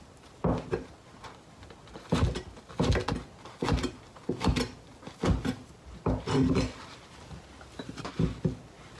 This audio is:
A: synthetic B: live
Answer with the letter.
B